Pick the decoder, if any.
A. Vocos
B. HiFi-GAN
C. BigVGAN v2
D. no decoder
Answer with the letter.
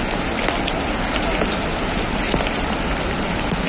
D